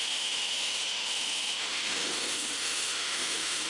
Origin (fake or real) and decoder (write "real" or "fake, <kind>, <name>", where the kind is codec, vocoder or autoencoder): fake, autoencoder, DAC-VAE